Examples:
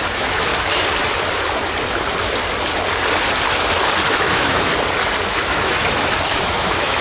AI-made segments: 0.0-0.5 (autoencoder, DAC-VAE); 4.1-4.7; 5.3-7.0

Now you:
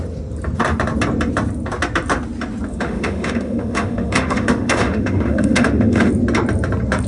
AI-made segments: 2.7-6.1 (autoencoder, DAC-VAE)

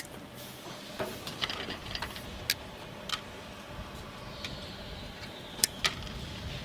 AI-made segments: 1.8-2.4 (vocoder, BigVGAN v2)

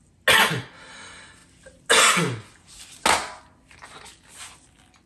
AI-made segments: none

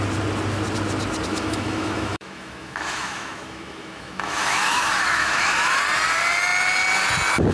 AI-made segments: 1.3-5.8 (autoencoder, DAC-VAE)

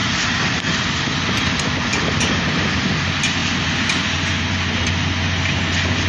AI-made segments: 0.0-0.6 (vocoder, BigVGAN v2); 1.9-2.4

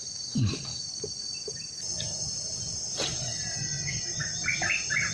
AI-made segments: none